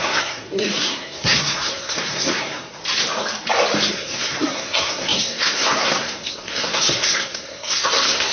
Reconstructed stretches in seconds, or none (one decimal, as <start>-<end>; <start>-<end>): 0.0-2.8; 3.9-8.3